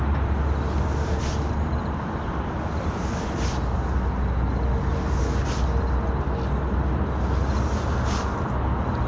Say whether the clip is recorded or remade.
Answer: recorded